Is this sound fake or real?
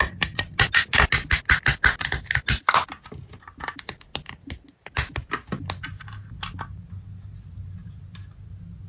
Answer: real